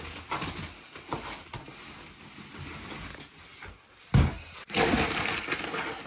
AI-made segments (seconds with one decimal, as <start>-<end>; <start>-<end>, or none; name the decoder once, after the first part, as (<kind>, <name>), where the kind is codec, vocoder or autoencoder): none